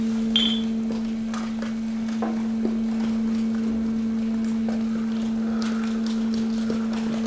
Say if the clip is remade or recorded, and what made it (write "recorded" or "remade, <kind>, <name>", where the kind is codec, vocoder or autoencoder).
recorded